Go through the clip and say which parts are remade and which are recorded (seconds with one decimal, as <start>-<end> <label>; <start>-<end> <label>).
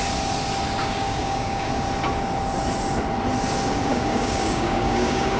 0.0-0.8 recorded; 0.8-1.7 remade; 1.7-3.9 recorded; 3.9-5.4 remade